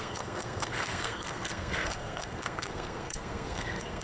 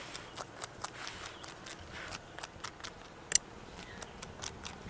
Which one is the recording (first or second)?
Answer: second